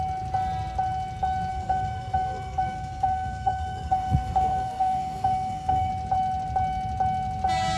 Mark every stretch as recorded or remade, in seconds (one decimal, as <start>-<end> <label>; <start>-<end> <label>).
0.0-1.5 recorded; 1.5-5.9 remade; 5.9-7.8 recorded